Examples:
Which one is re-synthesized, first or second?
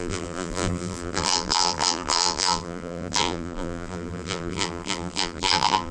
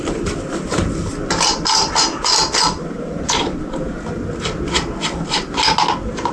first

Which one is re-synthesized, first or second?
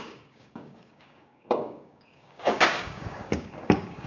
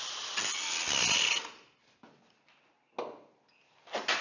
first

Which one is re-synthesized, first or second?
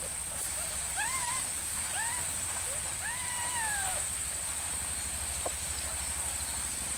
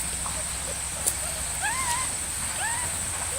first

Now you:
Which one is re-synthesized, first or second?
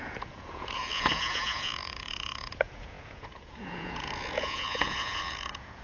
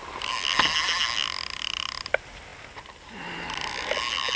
first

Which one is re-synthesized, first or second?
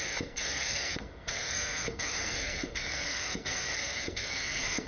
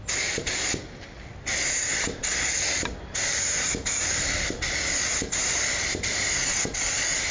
first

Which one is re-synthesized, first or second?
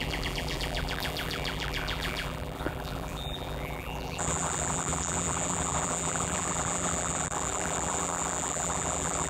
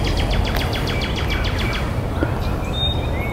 first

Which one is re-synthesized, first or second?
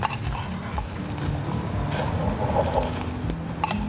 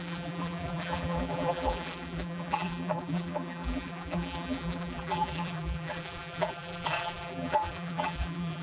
second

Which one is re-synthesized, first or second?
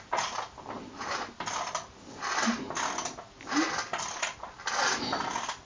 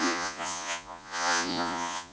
second